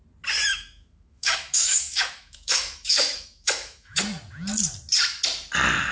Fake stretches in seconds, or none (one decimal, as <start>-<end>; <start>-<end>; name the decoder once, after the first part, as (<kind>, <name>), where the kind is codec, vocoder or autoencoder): 0.5-4.0 (autoencoder, DAC-VAE)